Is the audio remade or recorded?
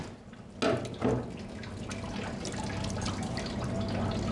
recorded